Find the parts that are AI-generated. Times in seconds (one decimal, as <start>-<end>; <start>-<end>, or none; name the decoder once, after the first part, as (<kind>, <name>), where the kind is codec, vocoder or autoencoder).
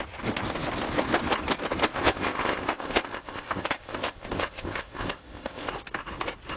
1.9-5.7 (codec, ZipCodec)